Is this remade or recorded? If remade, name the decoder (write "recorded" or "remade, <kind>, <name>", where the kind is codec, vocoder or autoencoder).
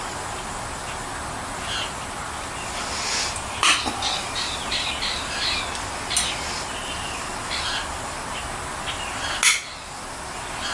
recorded